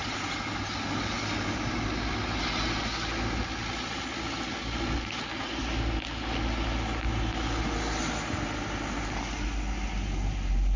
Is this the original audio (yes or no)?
yes